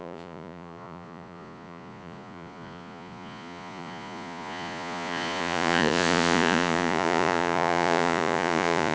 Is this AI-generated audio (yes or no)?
yes